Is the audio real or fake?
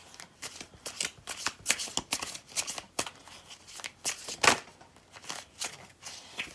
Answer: real